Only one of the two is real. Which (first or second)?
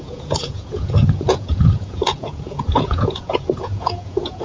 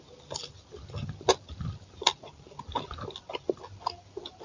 second